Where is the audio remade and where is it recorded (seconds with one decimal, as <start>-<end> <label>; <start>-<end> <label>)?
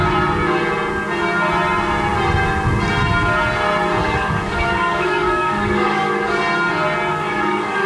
0.0-4.0 recorded; 4.0-6.4 remade; 6.4-7.1 recorded; 7.1-7.9 remade